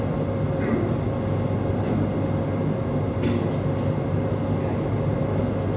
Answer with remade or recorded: recorded